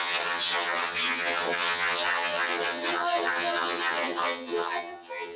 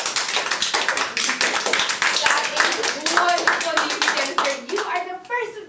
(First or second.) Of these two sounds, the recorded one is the second